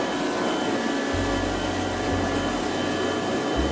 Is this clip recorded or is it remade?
recorded